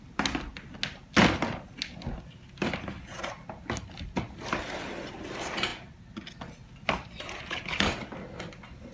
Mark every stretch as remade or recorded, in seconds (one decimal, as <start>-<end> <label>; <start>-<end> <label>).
0.0-8.9 recorded